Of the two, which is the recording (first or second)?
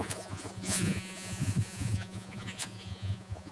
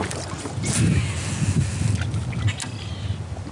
second